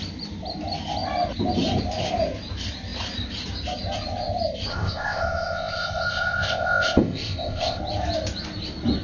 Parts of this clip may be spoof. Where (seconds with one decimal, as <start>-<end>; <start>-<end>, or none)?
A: 4.7-7.8

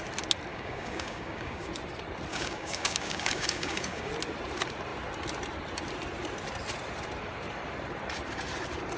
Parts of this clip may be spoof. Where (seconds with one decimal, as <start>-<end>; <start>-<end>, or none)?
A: 0.5-1.7; 2.3-4.1

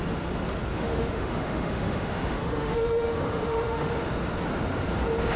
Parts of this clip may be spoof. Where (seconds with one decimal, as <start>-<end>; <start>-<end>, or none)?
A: 0.7-3.9